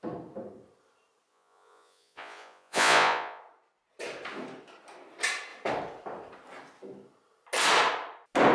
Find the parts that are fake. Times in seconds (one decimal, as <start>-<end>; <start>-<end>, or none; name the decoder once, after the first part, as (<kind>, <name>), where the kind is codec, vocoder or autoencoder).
1.3-3.4 (vocoder, Vocos)